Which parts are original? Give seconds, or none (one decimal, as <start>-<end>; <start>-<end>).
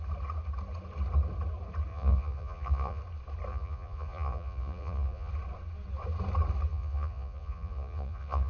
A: 0.0-1.9; 3.0-3.5; 5.3-6.7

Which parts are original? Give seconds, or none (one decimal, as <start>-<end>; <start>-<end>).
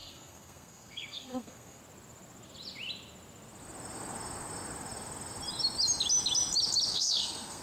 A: 1.8-6.9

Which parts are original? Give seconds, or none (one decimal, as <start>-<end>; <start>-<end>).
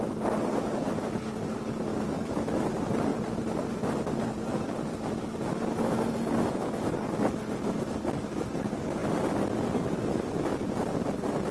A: 0.0-11.5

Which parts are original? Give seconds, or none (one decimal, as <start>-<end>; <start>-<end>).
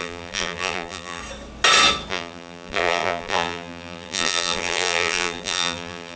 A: 1.2-2.1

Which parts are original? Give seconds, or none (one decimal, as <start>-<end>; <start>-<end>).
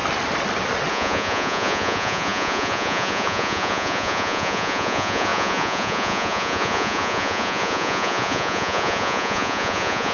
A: 0.0-0.9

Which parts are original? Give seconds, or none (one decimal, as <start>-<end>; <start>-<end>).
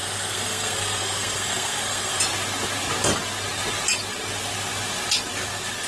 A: 2.2-5.9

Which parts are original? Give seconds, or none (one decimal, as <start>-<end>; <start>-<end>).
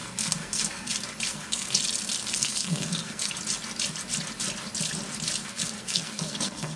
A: 0.9-1.3; 1.8-2.2; 3.3-5.4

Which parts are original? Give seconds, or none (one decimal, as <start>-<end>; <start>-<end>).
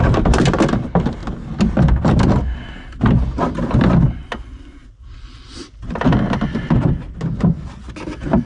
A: 0.0-4.8; 6.7-8.5